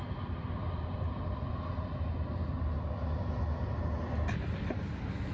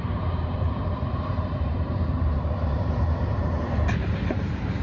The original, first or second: first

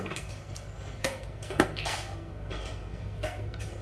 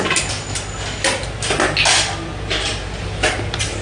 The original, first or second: second